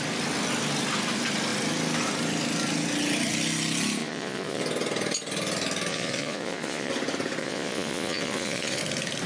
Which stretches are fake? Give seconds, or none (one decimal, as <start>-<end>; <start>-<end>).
4.0-4.6; 5.9-6.9; 7.4-8.8